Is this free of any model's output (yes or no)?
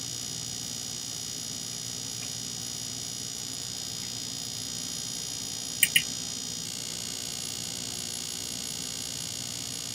yes